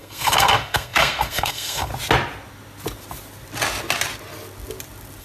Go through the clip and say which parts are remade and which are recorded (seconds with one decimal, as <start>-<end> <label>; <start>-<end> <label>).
0.0-1.9 remade; 1.9-5.2 recorded